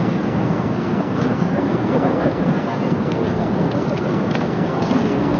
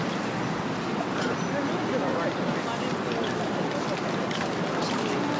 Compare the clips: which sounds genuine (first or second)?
second